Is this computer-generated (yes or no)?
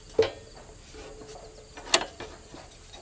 no